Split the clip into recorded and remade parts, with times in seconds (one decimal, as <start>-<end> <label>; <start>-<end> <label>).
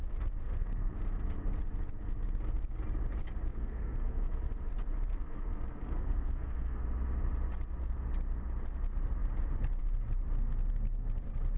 0.0-0.4 recorded; 0.4-1.0 remade; 1.0-3.5 recorded; 3.5-4.4 remade; 4.4-5.1 recorded; 5.1-6.8 remade; 6.8-11.6 recorded